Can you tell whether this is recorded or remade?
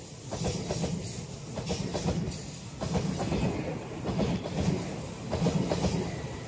recorded